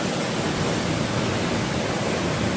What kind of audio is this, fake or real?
real